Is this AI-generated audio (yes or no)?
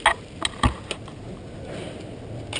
no